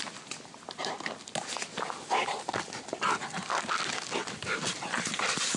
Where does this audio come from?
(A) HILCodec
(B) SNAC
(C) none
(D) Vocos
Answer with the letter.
C